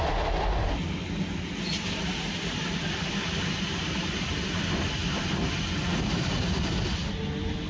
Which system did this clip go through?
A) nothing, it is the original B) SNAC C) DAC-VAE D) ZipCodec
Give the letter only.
A